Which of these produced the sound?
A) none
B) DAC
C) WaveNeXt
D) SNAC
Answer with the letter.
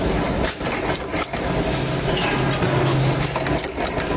A